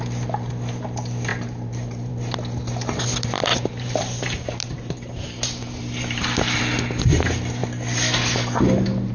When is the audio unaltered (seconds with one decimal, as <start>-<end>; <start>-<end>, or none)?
0.0-1.3; 2.1-3.5; 6.6-9.1